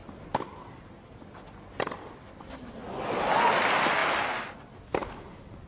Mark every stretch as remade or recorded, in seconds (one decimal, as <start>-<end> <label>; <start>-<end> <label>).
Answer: 0.0-5.7 recorded